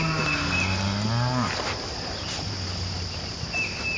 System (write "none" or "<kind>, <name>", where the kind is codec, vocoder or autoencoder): none